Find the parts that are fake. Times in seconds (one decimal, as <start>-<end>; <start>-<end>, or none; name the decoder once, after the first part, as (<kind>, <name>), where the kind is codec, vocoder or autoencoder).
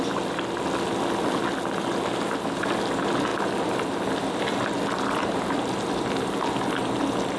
none